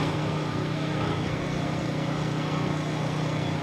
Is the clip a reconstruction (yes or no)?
yes